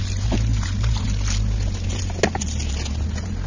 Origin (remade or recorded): recorded